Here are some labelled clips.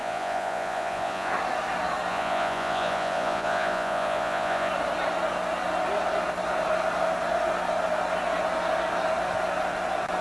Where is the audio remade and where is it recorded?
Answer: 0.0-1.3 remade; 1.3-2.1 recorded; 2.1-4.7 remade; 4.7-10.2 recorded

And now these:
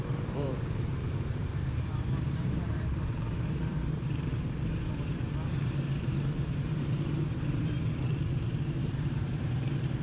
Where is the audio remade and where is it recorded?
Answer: 0.0-4.3 remade; 4.3-5.6 recorded; 5.6-10.0 remade

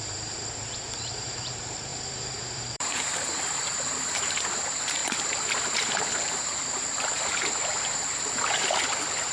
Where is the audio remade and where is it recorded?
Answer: 0.0-5.0 remade; 5.0-5.9 recorded; 5.9-9.3 remade

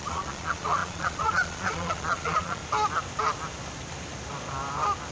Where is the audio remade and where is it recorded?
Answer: 0.0-2.6 remade; 2.6-5.1 recorded